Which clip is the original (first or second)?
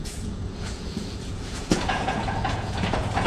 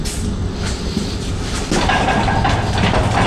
second